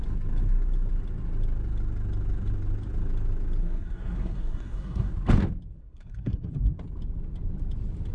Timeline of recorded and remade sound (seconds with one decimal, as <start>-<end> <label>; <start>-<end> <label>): 0.0-3.6 recorded; 3.6-5.1 remade; 5.1-5.8 recorded; 5.8-6.5 remade; 6.5-8.1 recorded